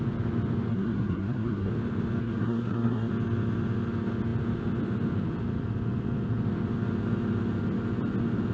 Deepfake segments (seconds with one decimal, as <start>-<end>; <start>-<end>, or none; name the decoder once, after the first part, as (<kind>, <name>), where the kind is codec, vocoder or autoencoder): 0.7-1.7 (codec, SNAC); 2.2-3.1